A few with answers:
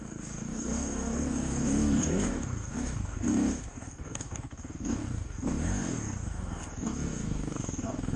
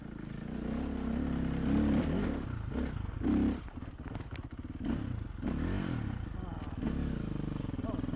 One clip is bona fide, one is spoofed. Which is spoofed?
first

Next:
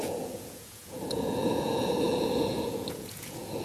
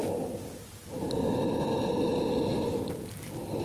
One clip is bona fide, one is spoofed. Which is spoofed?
first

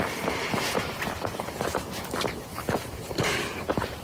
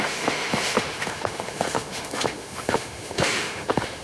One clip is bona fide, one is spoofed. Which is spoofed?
second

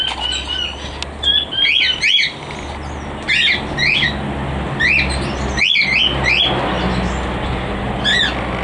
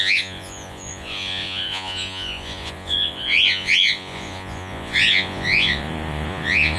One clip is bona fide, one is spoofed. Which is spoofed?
second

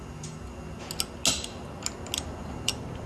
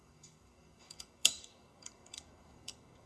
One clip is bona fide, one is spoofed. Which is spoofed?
second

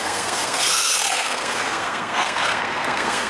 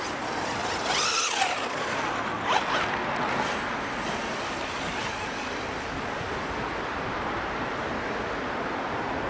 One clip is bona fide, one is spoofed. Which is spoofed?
first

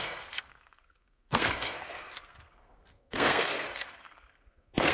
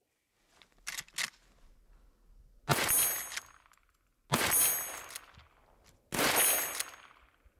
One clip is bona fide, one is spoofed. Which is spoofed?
first